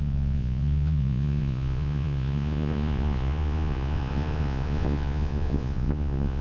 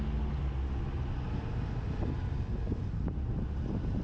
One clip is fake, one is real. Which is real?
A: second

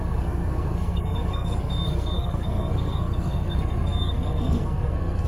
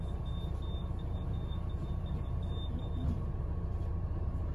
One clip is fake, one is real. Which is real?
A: second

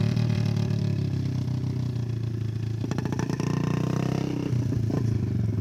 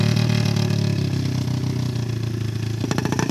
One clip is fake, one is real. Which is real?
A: second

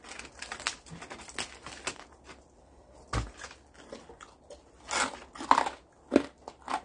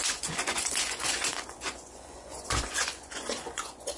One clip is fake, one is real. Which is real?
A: first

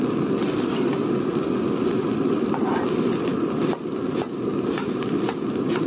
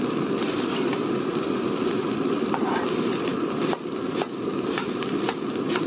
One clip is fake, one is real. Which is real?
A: first